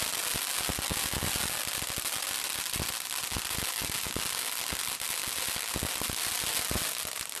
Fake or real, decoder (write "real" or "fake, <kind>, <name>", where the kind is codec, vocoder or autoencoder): real